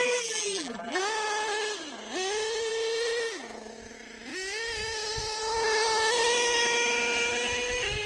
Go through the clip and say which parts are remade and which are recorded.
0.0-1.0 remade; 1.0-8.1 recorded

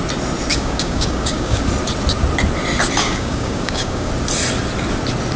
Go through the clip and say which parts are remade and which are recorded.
0.0-0.5 recorded; 0.5-1.6 remade; 1.6-3.0 recorded; 3.0-4.1 remade; 4.1-5.4 recorded

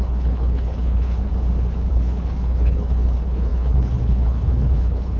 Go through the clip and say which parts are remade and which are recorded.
0.0-1.3 remade; 1.3-1.9 recorded; 1.9-5.2 remade